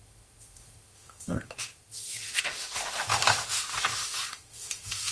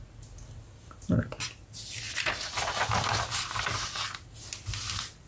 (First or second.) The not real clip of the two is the first